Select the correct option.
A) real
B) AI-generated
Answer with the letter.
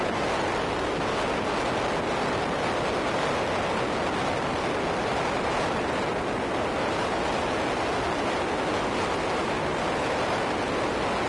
A